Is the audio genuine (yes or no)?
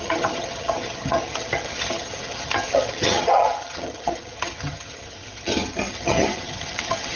no